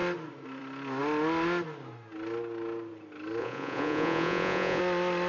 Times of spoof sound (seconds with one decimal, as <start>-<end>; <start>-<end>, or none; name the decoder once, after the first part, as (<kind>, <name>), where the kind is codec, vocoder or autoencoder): 3.4-4.8 (vocoder, Vocos)